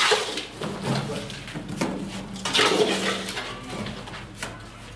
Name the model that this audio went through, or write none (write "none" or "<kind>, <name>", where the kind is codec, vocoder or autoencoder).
none